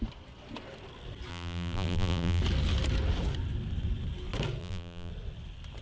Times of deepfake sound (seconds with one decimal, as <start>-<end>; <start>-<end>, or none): 1.3-2.4; 4.6-5.1

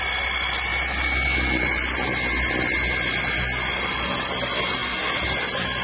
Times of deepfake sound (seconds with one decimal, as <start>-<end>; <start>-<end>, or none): none

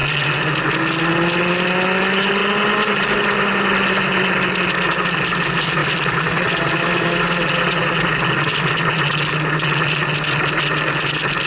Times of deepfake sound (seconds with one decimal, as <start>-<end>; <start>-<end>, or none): 5.8-9.2

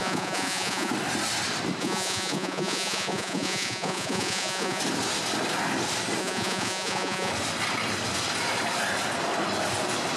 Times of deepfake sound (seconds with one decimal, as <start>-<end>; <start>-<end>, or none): 0.0-0.9; 1.8-4.8; 6.2-7.3

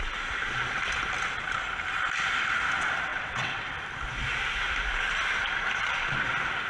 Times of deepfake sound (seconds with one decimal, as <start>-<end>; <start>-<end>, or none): 3.1-3.7